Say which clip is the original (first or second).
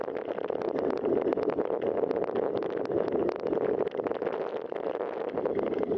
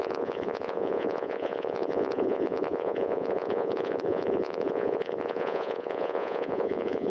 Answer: first